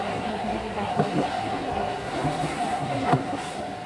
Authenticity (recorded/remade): remade